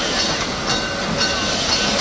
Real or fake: real